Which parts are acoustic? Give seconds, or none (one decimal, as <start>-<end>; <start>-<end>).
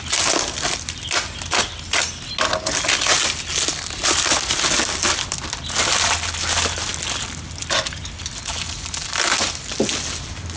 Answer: 0.0-10.6